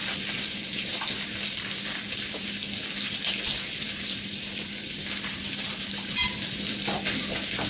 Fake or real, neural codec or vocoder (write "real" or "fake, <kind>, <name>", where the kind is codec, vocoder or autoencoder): real